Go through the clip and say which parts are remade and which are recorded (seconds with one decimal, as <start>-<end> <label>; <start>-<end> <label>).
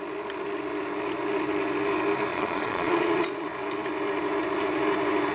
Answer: 0.0-2.3 recorded; 2.3-3.5 remade; 3.5-5.3 recorded